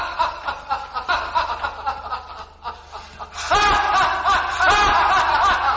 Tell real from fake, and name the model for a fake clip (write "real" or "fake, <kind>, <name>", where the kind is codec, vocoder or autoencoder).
real